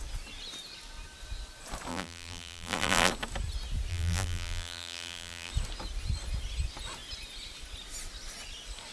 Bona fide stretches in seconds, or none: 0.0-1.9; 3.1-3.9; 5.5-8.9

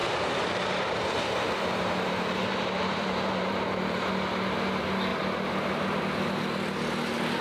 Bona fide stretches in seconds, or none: 4.1-7.4

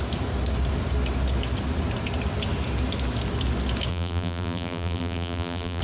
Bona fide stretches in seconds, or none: 0.0-3.9